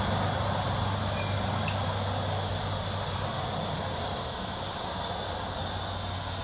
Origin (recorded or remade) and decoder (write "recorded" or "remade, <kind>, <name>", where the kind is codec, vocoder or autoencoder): recorded